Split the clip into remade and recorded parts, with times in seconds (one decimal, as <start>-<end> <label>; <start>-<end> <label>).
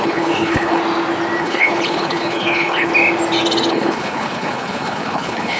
0.0-0.8 remade; 0.8-1.4 recorded; 1.4-2.9 remade; 2.9-3.7 recorded; 3.7-5.6 remade